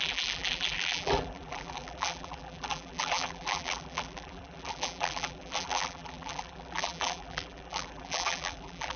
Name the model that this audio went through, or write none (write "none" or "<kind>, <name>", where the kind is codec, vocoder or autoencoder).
vocoder, BigVGAN v2